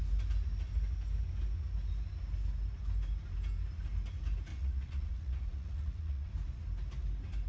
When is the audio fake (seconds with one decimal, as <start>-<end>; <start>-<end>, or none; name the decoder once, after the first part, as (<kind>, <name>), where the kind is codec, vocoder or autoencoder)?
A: 4.5-6.3 (vocoder, Vocos)